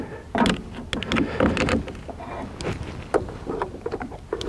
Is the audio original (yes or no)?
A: yes